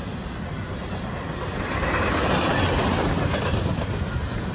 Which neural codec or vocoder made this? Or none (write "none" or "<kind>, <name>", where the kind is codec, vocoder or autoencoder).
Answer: none